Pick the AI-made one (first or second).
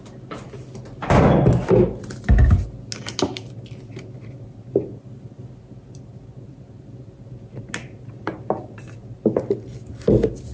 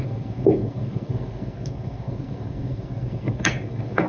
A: second